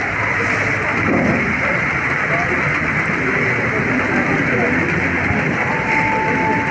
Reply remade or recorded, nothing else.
recorded